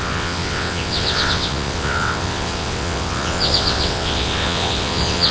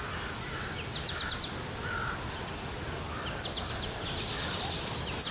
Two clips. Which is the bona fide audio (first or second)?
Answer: second